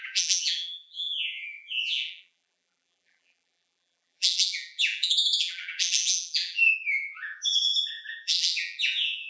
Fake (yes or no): yes